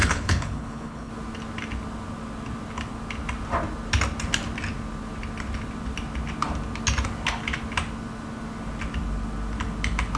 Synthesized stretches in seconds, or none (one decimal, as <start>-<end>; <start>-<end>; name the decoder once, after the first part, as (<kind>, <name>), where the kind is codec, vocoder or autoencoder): 0.0-1.1 (codec, HILCodec)